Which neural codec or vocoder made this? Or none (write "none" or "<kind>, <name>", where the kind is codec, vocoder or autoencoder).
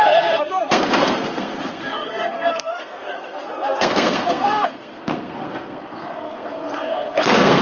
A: codec, SNAC